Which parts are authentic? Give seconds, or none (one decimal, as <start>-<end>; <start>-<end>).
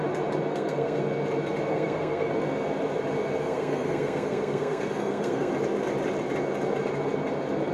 0.0-0.5; 1.0-1.7; 2.3-3.4; 5.5-7.7